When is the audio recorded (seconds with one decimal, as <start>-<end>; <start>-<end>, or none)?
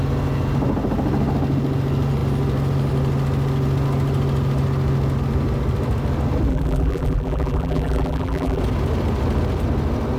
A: 0.0-6.5; 8.6-10.2